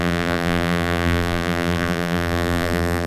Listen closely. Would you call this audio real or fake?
fake